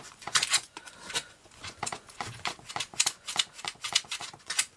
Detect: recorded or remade remade